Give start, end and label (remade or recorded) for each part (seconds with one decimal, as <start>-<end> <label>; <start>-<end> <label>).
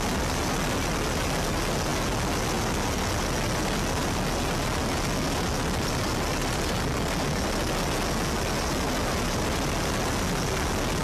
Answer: 0.0-11.0 recorded